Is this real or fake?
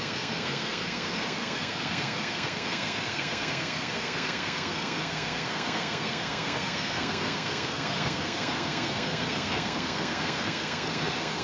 fake